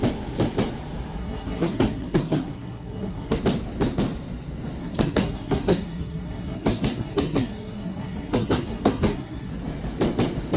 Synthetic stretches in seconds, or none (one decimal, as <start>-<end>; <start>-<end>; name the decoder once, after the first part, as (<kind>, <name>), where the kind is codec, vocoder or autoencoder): 1.2-3.4 (codec, SNAC); 4.8-9.5